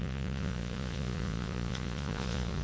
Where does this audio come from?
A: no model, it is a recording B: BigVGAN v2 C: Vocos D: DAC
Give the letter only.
C